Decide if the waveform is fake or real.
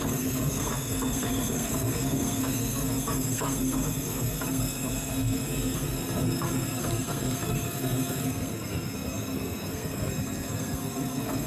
fake